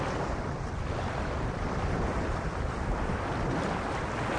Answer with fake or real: real